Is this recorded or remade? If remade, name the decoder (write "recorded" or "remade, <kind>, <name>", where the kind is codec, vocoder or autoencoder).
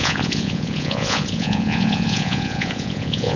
remade, vocoder, Vocos